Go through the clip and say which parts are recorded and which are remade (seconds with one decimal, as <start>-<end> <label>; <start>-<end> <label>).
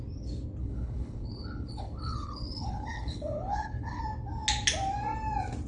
0.0-0.6 recorded; 0.6-4.0 remade; 4.0-5.7 recorded